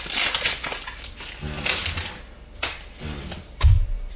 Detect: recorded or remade recorded